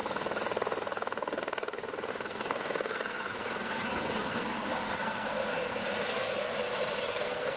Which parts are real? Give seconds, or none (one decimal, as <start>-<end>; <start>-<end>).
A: 0.0-2.1; 6.5-7.1